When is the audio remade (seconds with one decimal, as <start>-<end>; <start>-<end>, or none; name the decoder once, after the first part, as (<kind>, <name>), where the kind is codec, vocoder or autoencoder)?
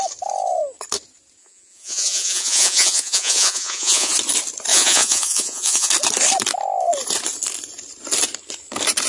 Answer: 1.4-4.1 (vocoder, Vocos); 4.7-5.9